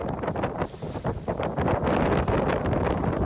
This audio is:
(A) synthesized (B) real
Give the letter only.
B